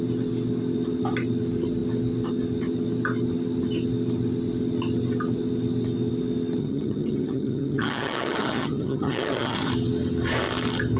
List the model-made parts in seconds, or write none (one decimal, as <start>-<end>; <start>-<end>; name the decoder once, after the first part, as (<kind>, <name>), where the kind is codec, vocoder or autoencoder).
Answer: 6.6-9.7 (vocoder, HiFi-GAN)